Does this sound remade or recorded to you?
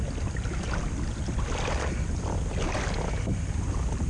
recorded